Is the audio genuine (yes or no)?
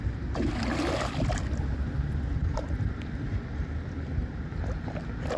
no